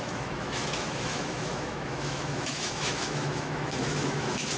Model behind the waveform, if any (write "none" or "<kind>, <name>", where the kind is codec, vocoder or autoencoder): autoencoder, DAC-VAE